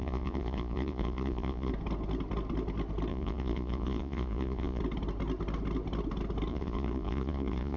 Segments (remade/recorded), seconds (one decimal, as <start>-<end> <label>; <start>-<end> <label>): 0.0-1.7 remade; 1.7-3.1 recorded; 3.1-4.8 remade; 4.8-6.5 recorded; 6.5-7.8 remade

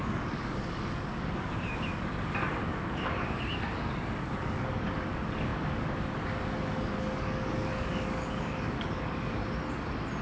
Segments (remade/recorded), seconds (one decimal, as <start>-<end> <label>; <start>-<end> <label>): 0.0-9.4 remade; 9.4-10.2 recorded

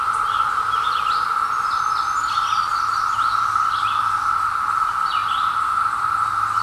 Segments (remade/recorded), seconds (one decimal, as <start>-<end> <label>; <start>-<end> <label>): 0.0-6.6 recorded

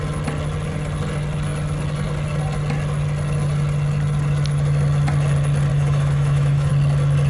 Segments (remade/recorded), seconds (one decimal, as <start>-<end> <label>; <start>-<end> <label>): 0.0-5.7 recorded; 5.7-6.7 remade; 6.7-7.3 recorded

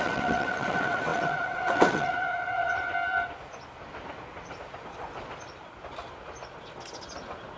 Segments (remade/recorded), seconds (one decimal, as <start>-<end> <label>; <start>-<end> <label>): 0.0-2.9 remade; 2.9-7.6 recorded